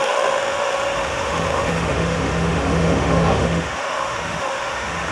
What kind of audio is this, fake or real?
fake